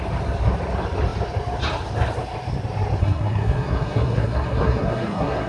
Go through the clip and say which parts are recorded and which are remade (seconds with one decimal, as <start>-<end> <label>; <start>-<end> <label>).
0.0-3.0 recorded; 3.0-5.5 remade